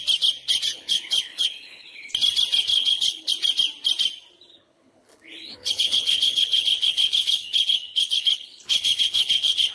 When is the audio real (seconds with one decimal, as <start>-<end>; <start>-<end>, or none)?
0.0-0.7; 2.1-2.7; 3.3-4.5